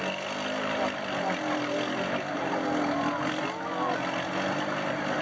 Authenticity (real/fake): real